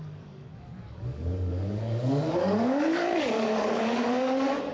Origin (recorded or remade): remade